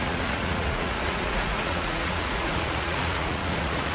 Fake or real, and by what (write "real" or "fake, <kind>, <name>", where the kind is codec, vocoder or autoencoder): fake, vocoder, Vocos